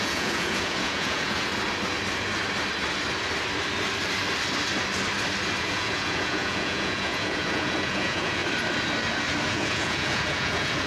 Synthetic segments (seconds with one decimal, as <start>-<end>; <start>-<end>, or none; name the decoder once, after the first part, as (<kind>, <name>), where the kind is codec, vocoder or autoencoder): 0.0-1.5 (vocoder, Vocos); 5.6-8.4; 9.5-10.9

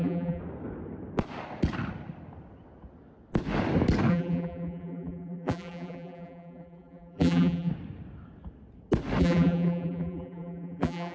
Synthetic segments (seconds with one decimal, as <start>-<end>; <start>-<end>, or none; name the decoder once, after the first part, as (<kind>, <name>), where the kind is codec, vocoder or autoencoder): 0.0-0.4 (vocoder, BigVGAN v2); 4.1-7.7; 9.2-11.1

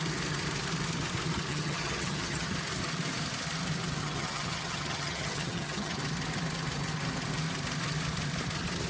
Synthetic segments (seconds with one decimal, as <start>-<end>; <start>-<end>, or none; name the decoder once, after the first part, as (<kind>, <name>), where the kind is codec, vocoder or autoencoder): 1.5-2.5 (vocoder, HiFi-GAN); 4.0-6.0